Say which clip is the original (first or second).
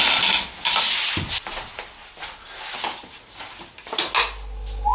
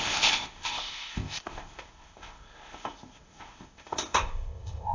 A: first